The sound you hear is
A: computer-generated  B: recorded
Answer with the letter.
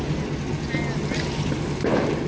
B